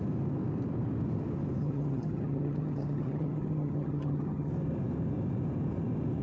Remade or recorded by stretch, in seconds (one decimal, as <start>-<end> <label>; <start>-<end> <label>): 0.0-1.6 recorded; 1.6-4.5 remade; 4.5-6.2 recorded